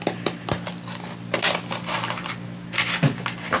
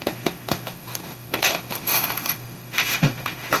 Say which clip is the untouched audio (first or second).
first